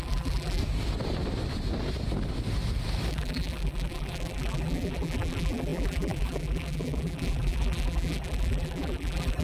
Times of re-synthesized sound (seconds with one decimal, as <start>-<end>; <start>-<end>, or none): 0.0-0.6; 3.1-9.4